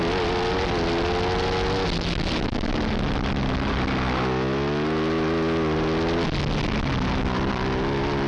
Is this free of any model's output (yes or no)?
yes